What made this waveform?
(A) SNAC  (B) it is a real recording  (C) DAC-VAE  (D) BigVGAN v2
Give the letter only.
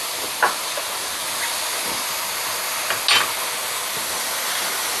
B